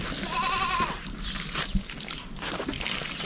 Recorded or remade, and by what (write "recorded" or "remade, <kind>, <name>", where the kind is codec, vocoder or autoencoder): recorded